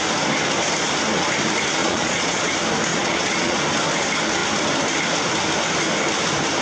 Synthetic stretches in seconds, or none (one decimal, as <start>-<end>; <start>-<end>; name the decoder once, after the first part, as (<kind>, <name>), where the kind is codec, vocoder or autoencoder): 1.8-2.5 (vocoder, Vocos); 2.9-3.6